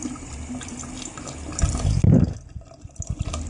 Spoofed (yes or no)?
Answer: no